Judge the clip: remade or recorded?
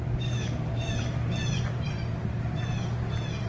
recorded